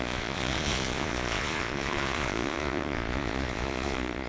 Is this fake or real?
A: fake